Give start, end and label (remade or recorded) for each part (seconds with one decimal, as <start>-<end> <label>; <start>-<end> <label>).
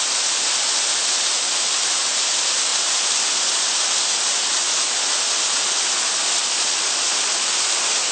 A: 0.0-6.4 recorded; 6.4-7.2 remade; 7.2-8.1 recorded